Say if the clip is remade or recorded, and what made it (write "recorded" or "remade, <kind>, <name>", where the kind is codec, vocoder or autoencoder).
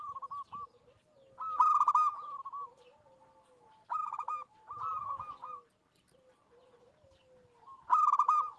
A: recorded